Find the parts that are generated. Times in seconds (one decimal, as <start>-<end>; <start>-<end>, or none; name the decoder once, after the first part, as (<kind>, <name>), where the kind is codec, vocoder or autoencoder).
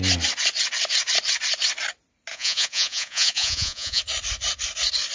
2.3-4.0 (vocoder, Vocos)